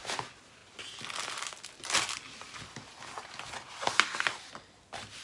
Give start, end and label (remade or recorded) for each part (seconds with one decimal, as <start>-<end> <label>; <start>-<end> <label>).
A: 0.0-5.2 recorded

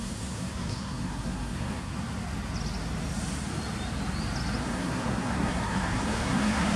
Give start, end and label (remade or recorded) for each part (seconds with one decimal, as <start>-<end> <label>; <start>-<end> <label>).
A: 0.0-1.9 remade; 1.9-4.6 recorded; 4.6-6.8 remade